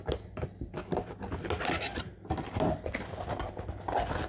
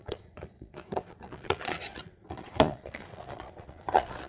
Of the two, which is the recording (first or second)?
first